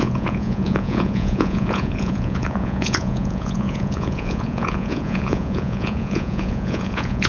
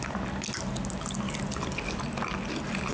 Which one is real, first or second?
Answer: second